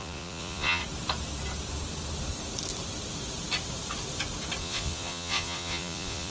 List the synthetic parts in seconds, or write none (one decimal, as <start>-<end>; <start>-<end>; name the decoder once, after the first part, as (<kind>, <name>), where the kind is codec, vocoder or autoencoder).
0.0-0.8 (vocoder, Vocos); 4.6-6.3